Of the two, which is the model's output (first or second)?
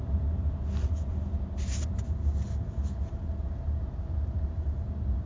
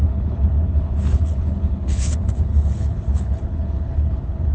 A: second